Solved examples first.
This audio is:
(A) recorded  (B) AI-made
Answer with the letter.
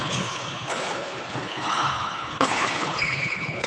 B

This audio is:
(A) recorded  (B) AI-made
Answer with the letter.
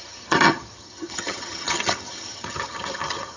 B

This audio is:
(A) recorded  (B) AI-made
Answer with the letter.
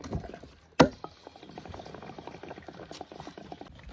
A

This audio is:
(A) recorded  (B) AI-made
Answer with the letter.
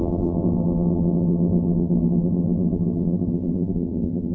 B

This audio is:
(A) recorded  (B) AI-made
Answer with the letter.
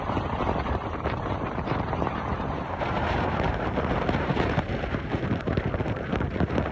B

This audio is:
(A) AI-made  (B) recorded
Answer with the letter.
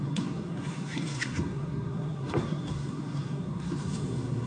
A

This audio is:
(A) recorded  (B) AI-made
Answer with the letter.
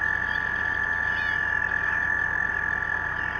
A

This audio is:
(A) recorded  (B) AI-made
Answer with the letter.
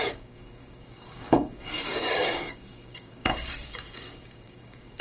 B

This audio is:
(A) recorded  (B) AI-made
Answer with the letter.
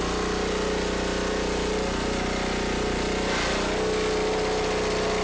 A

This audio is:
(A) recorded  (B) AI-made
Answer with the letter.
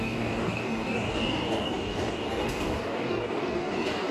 B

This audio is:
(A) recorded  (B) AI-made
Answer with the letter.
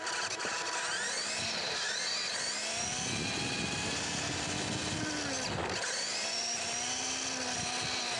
A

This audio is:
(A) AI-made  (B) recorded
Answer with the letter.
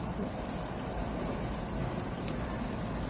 A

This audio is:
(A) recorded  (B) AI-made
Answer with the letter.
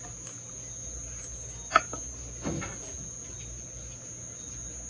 A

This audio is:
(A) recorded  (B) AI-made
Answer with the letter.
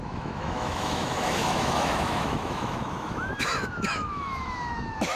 B